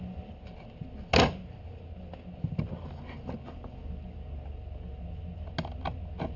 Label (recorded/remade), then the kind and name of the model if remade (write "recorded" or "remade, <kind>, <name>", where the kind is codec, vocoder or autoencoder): recorded